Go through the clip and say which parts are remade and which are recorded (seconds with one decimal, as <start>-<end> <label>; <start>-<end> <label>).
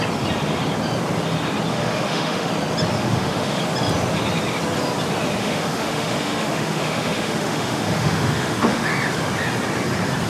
0.0-1.7 recorded; 1.7-2.5 remade; 2.5-3.0 recorded; 3.0-3.6 remade; 3.6-5.4 recorded; 5.4-8.9 remade; 8.9-10.3 recorded